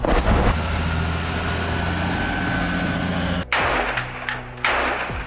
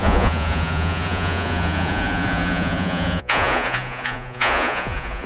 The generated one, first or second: second